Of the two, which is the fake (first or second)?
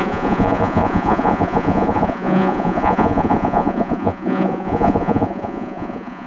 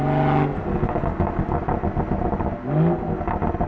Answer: first